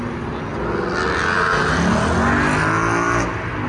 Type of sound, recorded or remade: recorded